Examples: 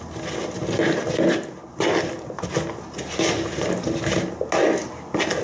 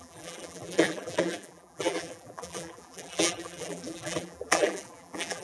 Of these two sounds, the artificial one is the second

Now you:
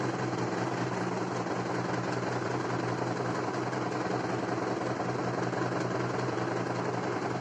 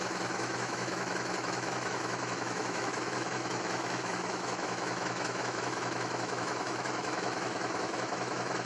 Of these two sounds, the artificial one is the second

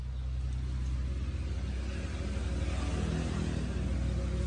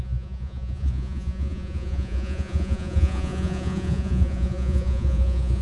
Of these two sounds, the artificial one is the second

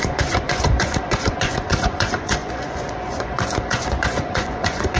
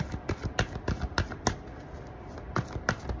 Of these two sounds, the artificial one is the first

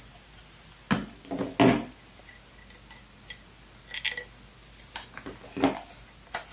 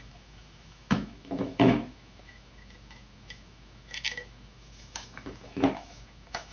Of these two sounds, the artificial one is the second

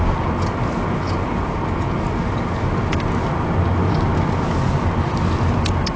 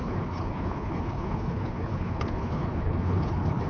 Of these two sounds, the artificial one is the second